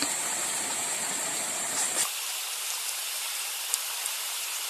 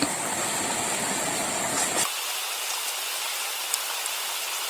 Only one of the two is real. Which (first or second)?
second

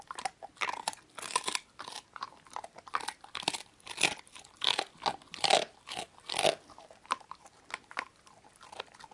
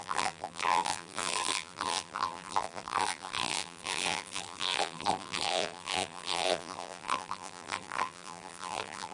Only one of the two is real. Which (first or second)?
first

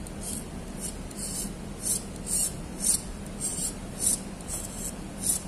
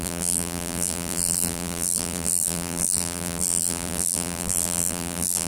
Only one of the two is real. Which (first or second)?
first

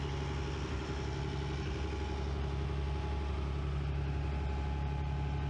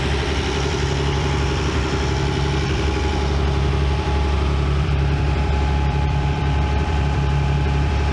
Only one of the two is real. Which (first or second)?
first